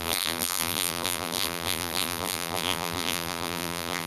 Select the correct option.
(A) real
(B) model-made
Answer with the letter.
B